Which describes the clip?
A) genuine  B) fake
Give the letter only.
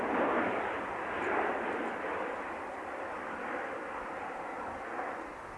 A